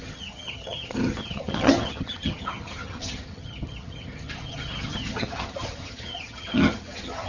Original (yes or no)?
no